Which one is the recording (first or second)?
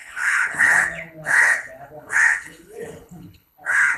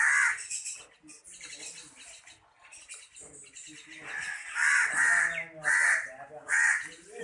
second